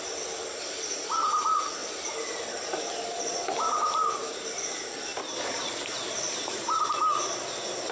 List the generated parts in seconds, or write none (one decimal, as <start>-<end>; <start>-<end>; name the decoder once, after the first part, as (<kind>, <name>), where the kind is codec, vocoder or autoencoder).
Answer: none